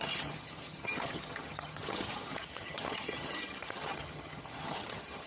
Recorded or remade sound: remade